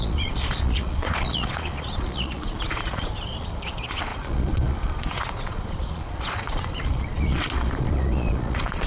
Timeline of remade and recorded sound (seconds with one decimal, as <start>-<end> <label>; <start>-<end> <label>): 0.0-8.9 remade